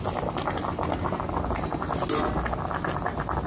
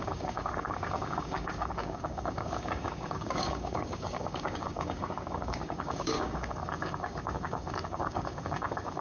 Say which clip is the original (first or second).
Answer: first